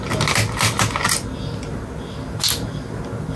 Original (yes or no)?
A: yes